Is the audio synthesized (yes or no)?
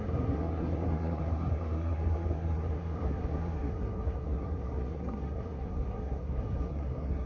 yes